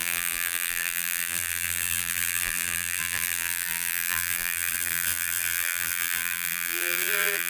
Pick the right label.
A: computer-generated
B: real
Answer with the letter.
A